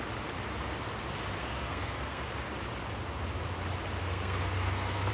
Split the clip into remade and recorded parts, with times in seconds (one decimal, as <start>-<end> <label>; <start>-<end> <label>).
0.0-1.4 recorded; 1.4-2.2 remade; 2.2-4.1 recorded; 4.1-5.1 remade